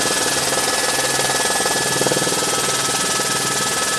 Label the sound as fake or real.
real